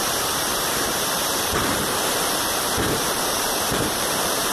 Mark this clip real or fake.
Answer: fake